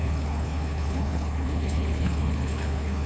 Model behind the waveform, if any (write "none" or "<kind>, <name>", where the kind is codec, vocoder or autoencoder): codec, HILCodec